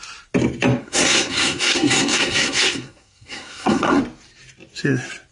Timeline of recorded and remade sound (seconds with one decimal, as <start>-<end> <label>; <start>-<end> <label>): 0.0-0.8 recorded; 0.8-4.0 remade; 4.0-5.3 recorded

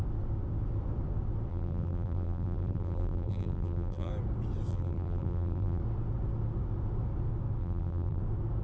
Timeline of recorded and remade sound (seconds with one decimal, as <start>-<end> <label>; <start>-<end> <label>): 0.0-1.5 recorded; 1.5-4.1 remade; 4.1-4.7 recorded; 4.7-5.8 remade; 5.8-7.6 recorded; 7.6-8.2 remade; 8.2-8.6 recorded